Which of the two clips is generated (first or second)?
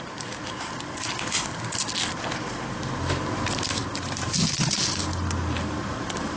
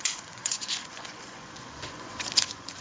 second